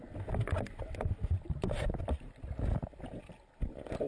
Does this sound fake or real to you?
real